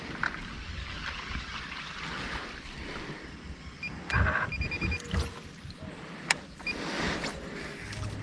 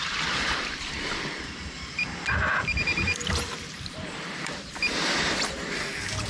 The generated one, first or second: second